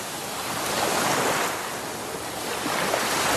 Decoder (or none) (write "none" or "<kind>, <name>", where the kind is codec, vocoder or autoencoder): none